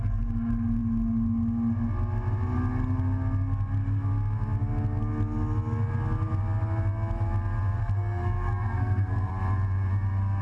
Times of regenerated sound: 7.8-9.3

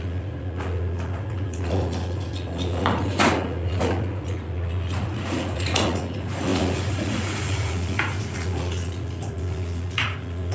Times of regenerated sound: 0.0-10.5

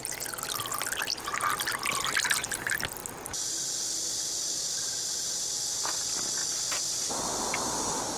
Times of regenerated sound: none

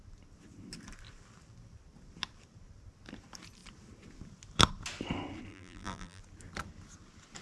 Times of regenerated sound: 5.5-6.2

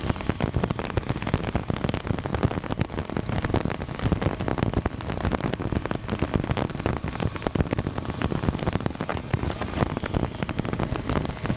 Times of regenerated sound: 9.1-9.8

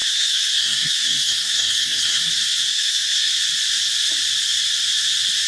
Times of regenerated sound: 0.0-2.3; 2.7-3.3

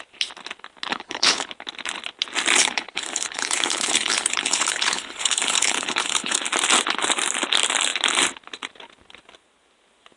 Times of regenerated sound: 0.9-1.5; 2.6-6.4